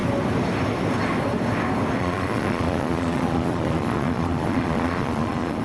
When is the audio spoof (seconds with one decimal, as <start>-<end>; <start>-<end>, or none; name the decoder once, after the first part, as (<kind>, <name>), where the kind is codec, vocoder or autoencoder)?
2.0-5.6 (vocoder, Vocos)